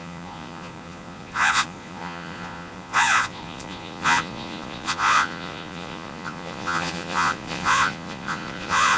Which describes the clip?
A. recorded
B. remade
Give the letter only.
B